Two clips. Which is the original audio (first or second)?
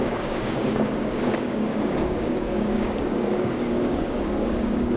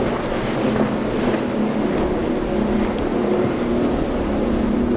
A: second